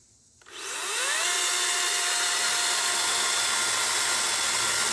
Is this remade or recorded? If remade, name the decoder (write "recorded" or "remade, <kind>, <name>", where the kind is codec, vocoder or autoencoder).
recorded